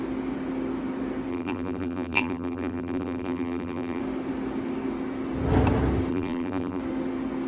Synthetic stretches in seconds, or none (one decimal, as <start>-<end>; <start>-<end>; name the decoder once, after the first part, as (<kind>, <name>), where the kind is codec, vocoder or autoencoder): 1.3-4.0 (vocoder, BigVGAN v2); 6.1-6.8